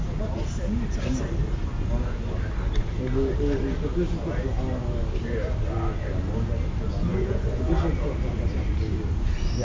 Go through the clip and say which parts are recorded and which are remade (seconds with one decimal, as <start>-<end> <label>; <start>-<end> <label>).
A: 0.0-7.1 recorded; 7.1-7.7 remade; 7.7-9.6 recorded

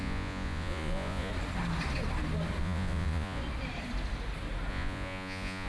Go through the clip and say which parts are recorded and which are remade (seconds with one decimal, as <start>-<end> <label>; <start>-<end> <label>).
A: 0.0-1.3 remade; 1.3-2.6 recorded; 2.6-3.4 remade; 3.4-4.7 recorded; 4.7-5.7 remade